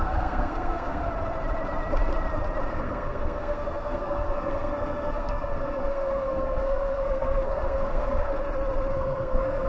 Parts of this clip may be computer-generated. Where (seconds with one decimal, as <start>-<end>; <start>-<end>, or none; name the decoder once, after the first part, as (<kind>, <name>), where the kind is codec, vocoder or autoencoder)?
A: 0.0-1.0 (codec, SNAC); 2.7-8.3; 8.9-9.7